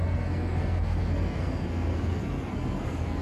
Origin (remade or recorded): remade